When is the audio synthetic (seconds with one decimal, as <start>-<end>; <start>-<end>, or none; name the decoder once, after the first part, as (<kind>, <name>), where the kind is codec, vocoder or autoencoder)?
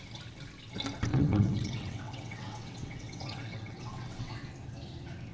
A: 1.1-4.3 (vocoder, WaveNeXt)